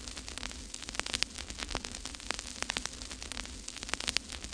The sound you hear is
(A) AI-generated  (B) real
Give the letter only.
B